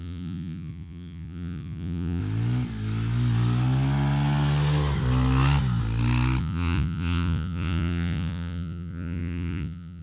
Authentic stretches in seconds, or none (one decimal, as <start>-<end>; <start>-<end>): 2.2-6.4